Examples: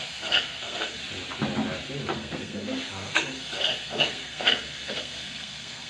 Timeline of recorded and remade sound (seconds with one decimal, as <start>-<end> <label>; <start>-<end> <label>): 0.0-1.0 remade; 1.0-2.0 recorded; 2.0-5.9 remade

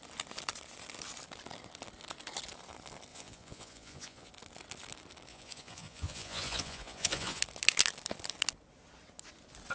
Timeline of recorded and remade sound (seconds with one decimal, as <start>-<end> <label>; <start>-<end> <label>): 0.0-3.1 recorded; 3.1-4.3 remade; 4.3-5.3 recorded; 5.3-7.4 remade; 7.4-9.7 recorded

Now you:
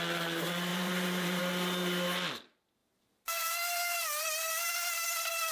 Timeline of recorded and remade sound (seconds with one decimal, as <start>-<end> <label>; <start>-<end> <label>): 0.0-0.7 recorded; 0.7-1.4 remade; 1.4-2.8 recorded; 2.8-4.7 remade; 4.7-5.5 recorded

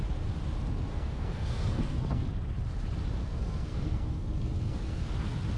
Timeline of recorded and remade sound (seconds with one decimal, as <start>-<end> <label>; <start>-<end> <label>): 0.0-0.9 recorded; 0.9-2.2 remade; 2.2-3.2 recorded; 3.2-5.1 remade; 5.1-5.6 recorded